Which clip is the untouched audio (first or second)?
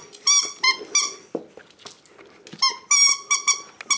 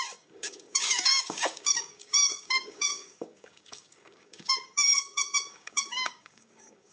first